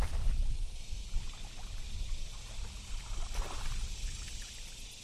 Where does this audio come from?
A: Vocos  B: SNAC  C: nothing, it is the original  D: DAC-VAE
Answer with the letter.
C